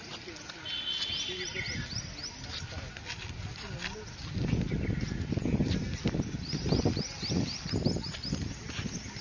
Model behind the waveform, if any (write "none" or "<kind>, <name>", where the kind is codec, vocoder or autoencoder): none